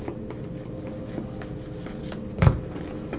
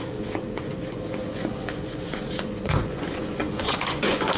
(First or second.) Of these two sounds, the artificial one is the second